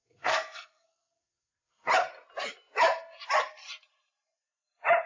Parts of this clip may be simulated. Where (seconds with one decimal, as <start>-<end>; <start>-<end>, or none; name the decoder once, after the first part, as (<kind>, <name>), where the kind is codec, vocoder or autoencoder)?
0.0-1.9 (codec, SNAC)